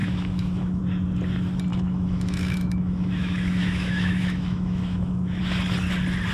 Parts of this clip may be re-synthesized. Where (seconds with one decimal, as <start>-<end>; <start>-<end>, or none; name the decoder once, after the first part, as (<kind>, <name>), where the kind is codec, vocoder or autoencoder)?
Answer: 0.0-0.8 (autoencoder, DAC-VAE); 1.7-5.4